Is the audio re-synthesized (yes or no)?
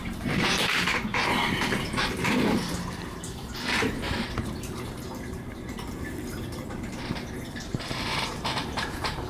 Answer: yes